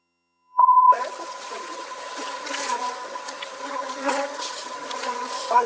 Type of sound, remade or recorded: remade